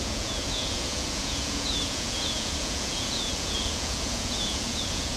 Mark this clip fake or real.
fake